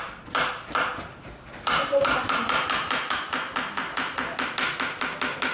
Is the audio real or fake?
real